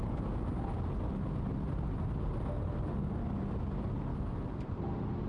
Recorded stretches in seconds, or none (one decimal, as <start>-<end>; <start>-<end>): 0.0-5.3